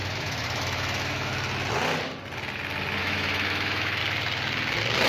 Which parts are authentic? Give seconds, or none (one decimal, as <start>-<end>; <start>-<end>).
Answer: 1.3-3.0; 4.0-5.1